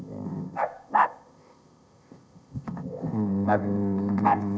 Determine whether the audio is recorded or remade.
remade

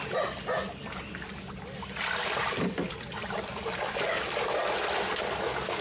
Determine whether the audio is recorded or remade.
recorded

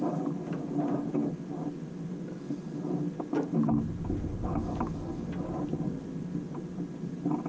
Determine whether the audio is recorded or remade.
recorded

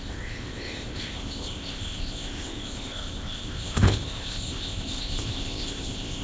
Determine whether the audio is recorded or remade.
remade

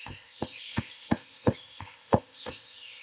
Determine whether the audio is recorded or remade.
remade